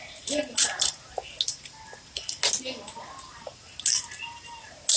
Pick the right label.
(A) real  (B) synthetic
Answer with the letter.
A